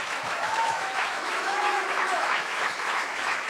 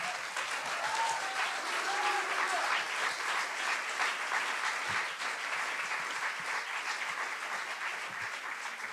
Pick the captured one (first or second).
second